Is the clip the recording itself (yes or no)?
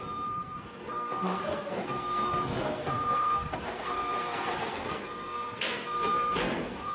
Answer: no